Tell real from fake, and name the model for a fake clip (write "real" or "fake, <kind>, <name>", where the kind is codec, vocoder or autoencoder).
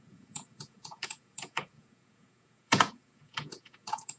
fake, vocoder, Vocos